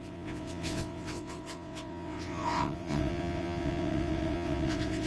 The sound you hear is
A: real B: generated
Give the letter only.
B